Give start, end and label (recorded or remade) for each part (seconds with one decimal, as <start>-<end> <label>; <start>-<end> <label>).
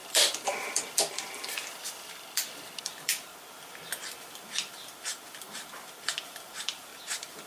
0.0-3.3 remade; 3.3-4.1 recorded; 4.1-7.5 remade